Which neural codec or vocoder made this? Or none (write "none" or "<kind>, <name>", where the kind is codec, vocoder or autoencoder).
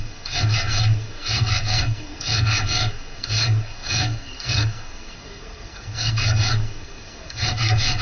codec, SNAC